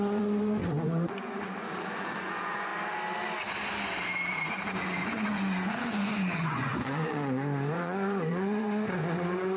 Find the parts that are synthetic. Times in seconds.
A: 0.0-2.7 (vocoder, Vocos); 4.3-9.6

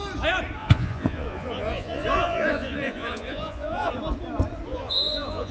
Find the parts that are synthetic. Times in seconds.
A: 0.6-3.9 (vocoder, Vocos); 4.7-5.5

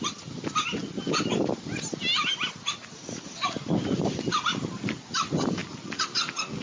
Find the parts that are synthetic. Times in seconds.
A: none